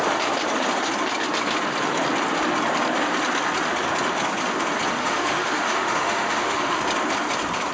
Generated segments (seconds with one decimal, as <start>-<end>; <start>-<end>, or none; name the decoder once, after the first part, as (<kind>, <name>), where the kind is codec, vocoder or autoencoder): 5.0-6.8 (autoencoder, DAC-VAE)